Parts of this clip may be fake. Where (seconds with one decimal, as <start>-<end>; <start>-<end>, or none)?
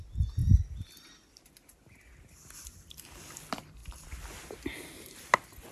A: none